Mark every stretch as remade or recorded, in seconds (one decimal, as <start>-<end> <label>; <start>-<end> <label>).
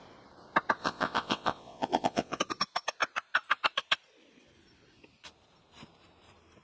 0.0-0.8 recorded; 0.8-2.4 remade; 2.4-6.6 recorded